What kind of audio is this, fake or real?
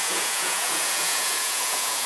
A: fake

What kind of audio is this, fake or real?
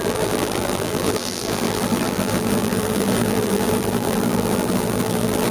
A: fake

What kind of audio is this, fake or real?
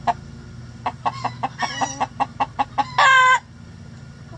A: real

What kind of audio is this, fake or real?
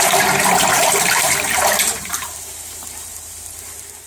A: fake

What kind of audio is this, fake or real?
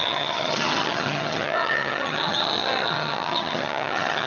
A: fake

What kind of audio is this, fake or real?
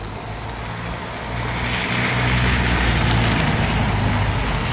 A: real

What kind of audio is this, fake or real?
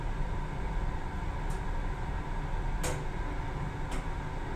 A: real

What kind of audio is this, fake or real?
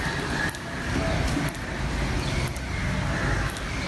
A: real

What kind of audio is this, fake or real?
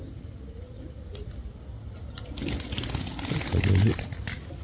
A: real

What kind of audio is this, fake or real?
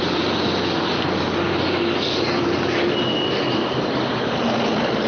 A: real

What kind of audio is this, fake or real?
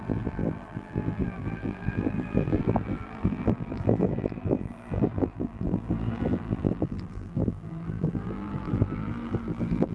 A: fake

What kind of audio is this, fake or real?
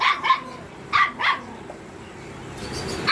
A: real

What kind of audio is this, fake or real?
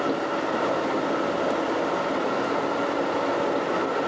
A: real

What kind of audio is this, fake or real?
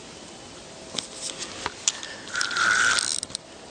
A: real